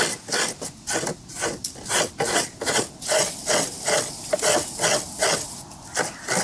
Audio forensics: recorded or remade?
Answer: recorded